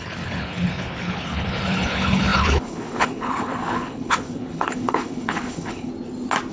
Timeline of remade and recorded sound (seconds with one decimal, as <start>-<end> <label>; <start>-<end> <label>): 0.0-5.9 remade; 5.9-6.5 recorded